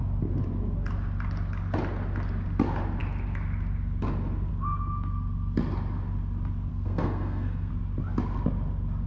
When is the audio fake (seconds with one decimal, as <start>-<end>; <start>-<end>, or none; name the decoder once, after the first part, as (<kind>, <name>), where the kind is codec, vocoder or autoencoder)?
6.7-7.7 (codec, SNAC)